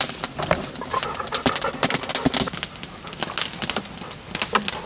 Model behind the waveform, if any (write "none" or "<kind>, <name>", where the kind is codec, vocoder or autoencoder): none